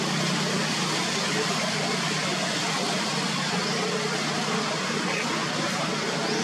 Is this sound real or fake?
real